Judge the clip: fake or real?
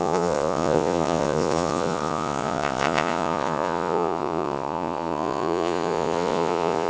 fake